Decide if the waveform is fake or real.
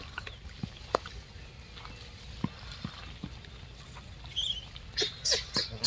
real